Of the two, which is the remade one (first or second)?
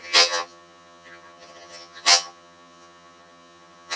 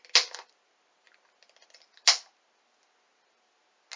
first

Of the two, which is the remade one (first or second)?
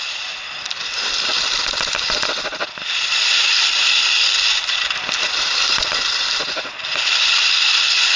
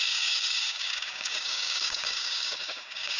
second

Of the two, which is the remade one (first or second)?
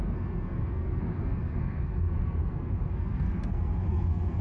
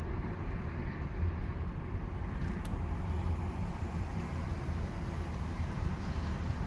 first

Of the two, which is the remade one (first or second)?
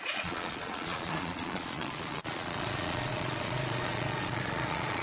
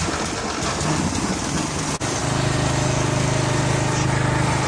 first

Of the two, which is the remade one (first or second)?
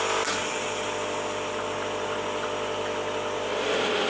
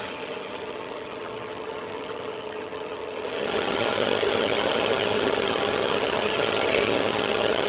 second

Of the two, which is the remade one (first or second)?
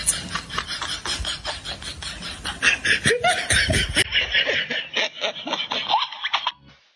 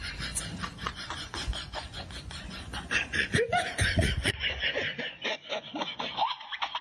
second